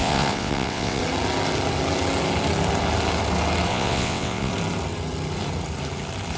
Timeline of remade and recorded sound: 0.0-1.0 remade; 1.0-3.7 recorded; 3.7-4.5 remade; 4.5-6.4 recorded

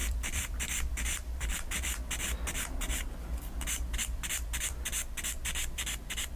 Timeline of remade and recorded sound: 0.0-1.7 remade; 1.7-3.2 recorded; 3.2-4.7 remade; 4.7-6.4 recorded

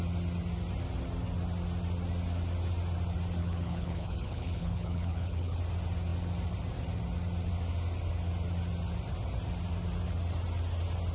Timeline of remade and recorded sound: 0.0-3.4 recorded; 3.4-5.6 remade; 5.6-11.1 recorded